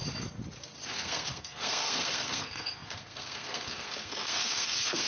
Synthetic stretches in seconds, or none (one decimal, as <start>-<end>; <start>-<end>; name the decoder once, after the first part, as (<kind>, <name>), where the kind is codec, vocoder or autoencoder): 0.9-5.1 (codec, SNAC)